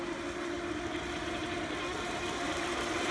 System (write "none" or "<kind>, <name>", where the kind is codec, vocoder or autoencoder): none